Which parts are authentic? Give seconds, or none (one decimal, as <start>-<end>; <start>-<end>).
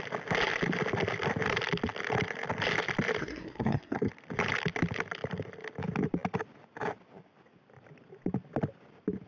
0.0-3.2; 4.1-9.3